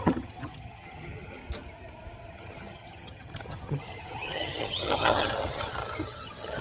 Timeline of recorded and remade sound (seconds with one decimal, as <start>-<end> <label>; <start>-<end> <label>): 0.0-1.4 remade; 1.4-2.3 recorded; 2.3-6.6 remade